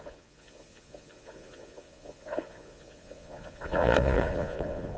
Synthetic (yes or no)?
yes